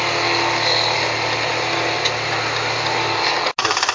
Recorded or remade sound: recorded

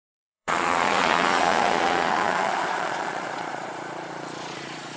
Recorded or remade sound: remade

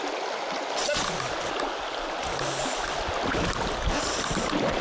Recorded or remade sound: recorded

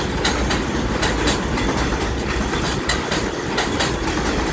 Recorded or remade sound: recorded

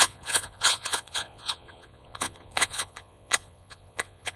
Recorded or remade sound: remade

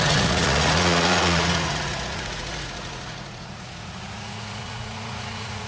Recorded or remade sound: remade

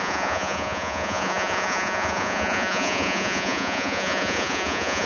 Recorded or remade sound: remade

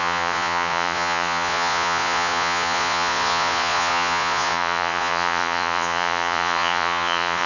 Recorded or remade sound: remade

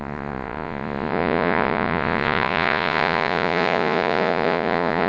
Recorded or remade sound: remade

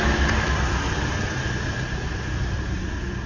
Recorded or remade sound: recorded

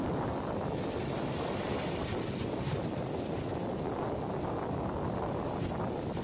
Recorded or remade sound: recorded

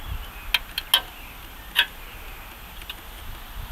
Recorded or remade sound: recorded